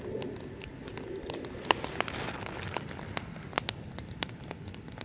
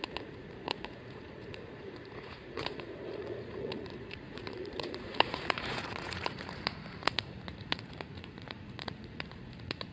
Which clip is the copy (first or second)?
second